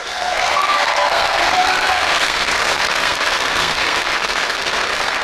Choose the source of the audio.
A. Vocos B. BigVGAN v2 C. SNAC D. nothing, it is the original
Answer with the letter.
C